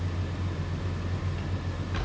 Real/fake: real